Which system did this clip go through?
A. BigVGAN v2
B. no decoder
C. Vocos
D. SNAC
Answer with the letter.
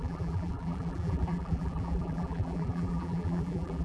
A